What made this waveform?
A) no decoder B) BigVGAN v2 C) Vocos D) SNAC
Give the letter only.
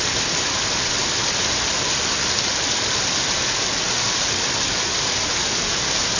A